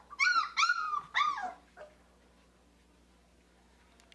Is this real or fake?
real